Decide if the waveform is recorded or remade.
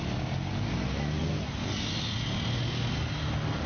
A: recorded